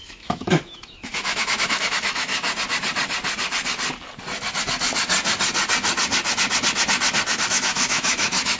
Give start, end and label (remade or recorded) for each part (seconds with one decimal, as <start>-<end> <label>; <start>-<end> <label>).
0.0-2.3 remade; 2.3-7.5 recorded; 7.5-8.6 remade